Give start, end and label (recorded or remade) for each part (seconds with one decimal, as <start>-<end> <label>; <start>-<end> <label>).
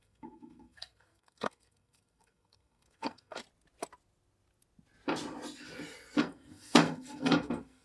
0.0-3.4 remade; 3.4-6.2 recorded; 6.2-7.8 remade